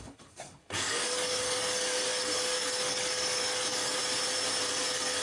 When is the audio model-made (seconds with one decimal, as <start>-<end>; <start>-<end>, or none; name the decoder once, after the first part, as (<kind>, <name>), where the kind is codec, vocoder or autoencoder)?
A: 0.0-4.0 (codec, DAC); 4.7-5.2